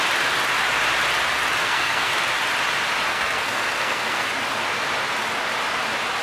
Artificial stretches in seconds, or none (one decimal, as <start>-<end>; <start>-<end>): 1.6-2.1; 3.1-4.3